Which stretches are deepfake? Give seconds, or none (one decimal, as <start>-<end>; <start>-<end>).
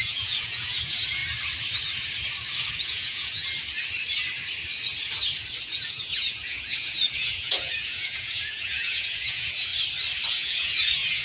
0.0-1.2; 2.7-3.4; 5.6-9.7; 10.3-11.2